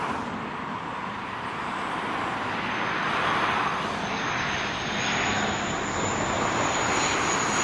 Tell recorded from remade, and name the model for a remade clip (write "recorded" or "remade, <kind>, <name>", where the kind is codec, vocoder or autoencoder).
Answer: recorded